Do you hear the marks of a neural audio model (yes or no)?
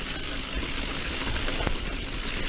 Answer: no